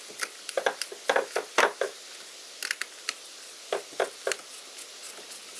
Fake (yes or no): no